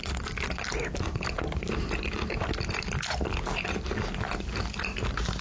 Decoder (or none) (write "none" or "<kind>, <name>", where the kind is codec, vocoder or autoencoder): none